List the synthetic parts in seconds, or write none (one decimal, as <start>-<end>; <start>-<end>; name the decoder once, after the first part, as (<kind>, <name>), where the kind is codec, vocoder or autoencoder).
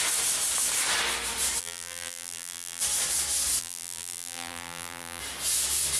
1.6-2.8 (vocoder, BigVGAN v2); 3.6-5.2